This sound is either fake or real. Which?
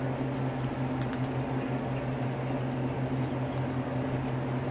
real